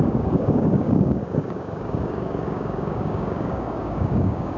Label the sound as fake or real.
fake